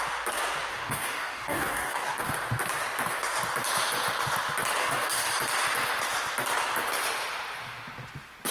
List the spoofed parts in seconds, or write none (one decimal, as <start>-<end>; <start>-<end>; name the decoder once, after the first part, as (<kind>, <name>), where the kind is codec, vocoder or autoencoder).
0.7-2.3 (codec, DAC); 4.8-5.3